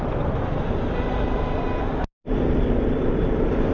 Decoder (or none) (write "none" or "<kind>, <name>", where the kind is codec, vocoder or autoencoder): none